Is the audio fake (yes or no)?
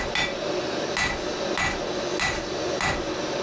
no